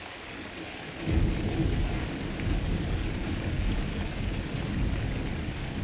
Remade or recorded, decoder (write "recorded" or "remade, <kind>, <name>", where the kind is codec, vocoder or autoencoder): remade, codec, DAC